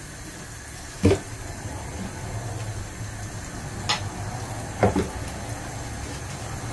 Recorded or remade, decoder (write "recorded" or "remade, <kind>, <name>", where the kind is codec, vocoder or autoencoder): recorded